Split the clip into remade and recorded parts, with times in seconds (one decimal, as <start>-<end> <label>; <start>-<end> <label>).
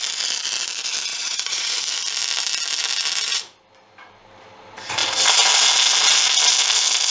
0.0-1.1 recorded; 1.1-1.7 remade; 1.7-7.1 recorded